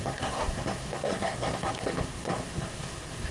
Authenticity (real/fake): fake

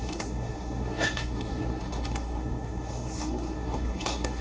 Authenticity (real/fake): fake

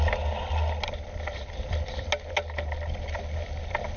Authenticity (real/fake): real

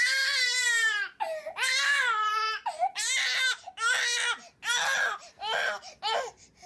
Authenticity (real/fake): real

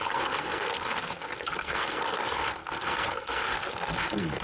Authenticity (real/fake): fake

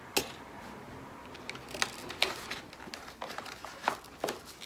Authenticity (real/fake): real